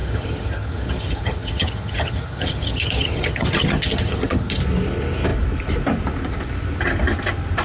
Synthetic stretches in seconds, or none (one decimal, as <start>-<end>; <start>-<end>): 0.0-4.6